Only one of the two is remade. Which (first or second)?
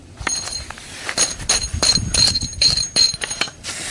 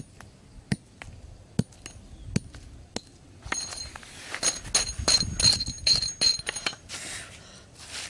first